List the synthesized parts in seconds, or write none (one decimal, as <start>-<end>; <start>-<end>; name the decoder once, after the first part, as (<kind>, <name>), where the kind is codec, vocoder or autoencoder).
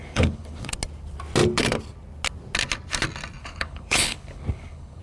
0.0-0.7 (codec, HILCodec); 3.4-5.0